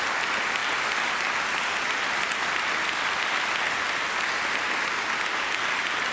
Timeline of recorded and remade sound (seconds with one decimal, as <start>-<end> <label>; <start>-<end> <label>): 0.0-6.1 recorded